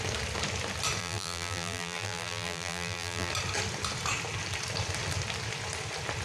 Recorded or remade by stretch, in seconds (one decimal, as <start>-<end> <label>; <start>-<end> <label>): 0.0-1.0 recorded; 1.0-3.3 remade; 3.3-6.2 recorded